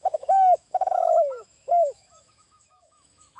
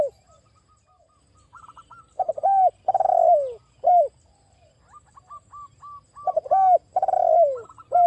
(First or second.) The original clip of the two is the second